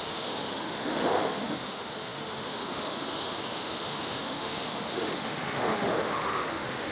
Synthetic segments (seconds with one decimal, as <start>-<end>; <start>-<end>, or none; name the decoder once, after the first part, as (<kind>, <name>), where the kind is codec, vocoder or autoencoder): 0.0-6.9 (autoencoder, DAC-VAE)